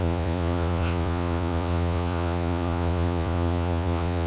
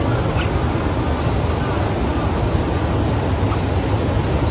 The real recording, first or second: second